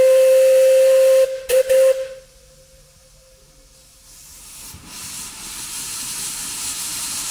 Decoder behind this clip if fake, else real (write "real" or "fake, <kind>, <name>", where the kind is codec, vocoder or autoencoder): real